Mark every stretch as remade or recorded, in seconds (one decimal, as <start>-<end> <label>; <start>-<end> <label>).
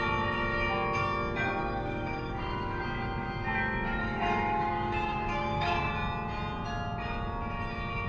0.0-1.6 recorded; 1.6-2.8 remade; 2.8-4.0 recorded; 4.0-5.9 remade; 5.9-8.1 recorded